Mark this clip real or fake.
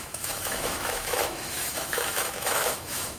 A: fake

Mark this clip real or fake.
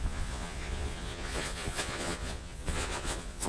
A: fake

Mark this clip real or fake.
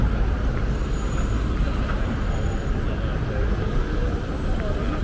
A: real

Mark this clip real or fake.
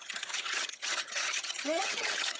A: fake